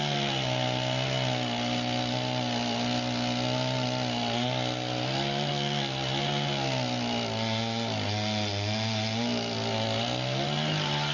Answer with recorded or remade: recorded